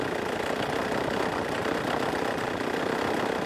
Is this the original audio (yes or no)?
yes